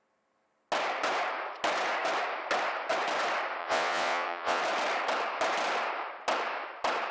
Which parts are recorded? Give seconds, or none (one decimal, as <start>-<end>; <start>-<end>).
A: 0.0-3.6; 4.6-7.1